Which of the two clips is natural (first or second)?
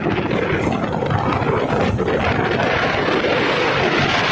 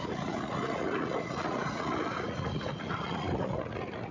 first